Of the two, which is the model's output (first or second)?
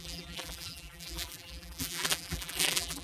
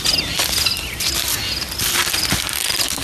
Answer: first